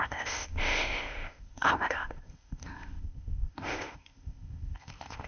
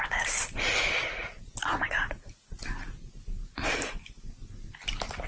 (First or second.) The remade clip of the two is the first